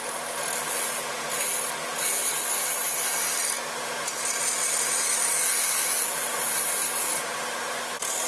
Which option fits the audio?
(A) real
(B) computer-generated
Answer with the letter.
A